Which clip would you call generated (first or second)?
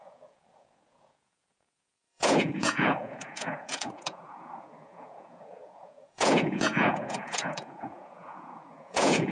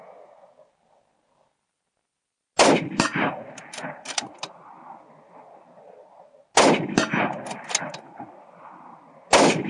first